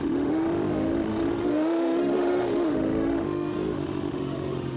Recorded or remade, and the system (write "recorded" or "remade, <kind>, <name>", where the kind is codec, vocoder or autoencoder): remade, autoencoder, DAC-VAE